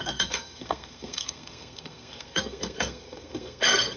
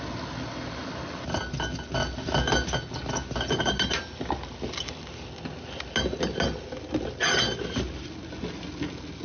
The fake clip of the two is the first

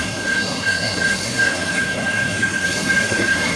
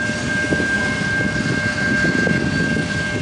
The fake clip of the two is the first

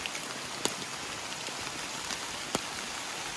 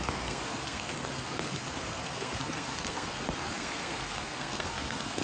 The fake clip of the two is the second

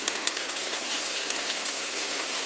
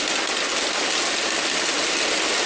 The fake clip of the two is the first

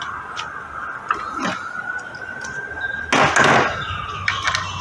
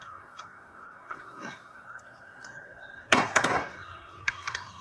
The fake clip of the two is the second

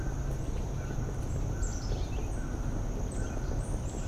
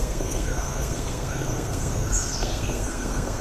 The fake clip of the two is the second